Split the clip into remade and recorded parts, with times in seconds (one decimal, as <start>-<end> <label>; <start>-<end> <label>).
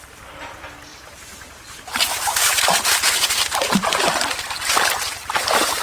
0.0-0.9 recorded; 0.9-4.4 remade; 4.4-5.8 recorded